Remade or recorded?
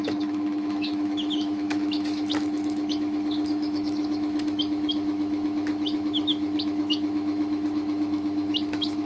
remade